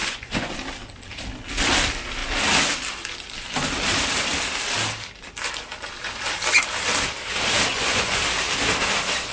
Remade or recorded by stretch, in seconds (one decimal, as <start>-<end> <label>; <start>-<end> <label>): 0.0-0.5 remade; 0.5-7.7 recorded; 7.7-8.2 remade; 8.2-9.3 recorded

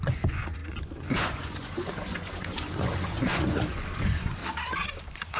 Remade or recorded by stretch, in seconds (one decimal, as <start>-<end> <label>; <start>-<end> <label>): 0.0-4.4 remade; 4.4-5.0 recorded; 5.0-5.4 remade

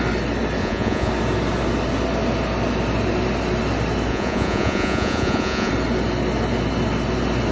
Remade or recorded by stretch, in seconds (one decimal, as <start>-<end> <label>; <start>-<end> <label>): 0.0-0.6 recorded; 0.6-1.1 remade; 1.1-4.1 recorded; 4.1-5.7 remade; 5.7-7.5 recorded

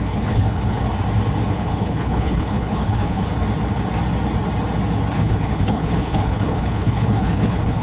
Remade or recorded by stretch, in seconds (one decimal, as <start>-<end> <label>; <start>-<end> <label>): 0.0-0.8 remade; 0.8-1.5 recorded; 1.5-3.3 remade; 3.3-5.1 recorded; 5.1-7.8 remade

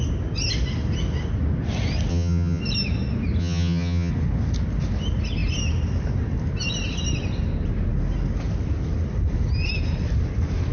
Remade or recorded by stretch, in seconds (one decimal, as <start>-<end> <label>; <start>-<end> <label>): 0.0-2.1 recorded; 2.1-2.6 remade; 2.6-3.4 recorded; 3.4-4.1 remade; 4.1-10.7 recorded